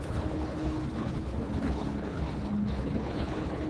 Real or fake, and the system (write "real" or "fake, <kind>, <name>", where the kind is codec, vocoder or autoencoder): fake, codec, HILCodec